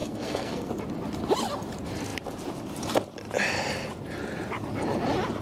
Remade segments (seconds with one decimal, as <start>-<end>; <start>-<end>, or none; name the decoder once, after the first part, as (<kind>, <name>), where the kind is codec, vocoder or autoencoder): 0.0-0.7 (codec, SNAC)